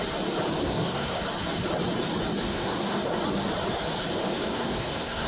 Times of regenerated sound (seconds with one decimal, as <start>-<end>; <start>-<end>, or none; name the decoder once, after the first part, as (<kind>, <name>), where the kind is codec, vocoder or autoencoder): 0.6-1.2 (codec, SNAC); 2.4-3.0; 4.3-5.3